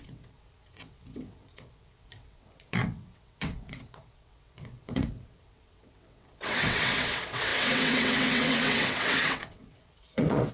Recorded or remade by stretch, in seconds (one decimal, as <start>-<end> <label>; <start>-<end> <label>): 0.0-10.5 remade